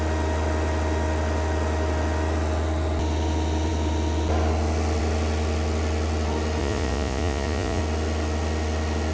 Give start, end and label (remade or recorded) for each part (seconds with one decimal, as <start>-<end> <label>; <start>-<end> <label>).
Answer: 0.0-6.6 recorded; 6.6-7.8 remade; 7.8-9.1 recorded